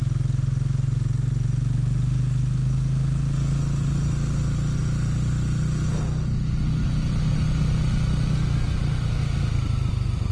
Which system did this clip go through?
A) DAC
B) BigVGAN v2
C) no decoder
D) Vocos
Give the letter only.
C